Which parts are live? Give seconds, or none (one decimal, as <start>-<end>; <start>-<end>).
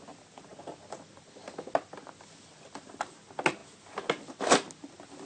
0.0-5.3